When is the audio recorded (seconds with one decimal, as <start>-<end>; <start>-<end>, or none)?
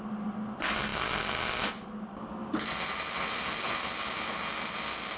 0.0-5.2